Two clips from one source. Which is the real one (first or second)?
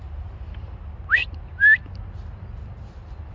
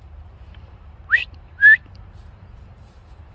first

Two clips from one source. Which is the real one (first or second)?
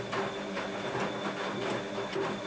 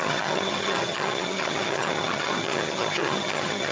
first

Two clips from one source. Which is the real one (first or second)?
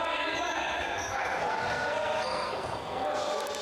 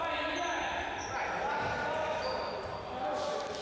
second